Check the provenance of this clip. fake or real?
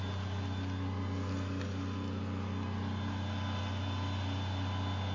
real